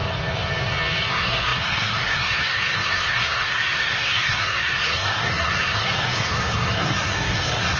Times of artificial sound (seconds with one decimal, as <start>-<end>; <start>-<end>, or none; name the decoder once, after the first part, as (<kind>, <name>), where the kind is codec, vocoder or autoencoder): 1.1-7.8 (codec, SNAC)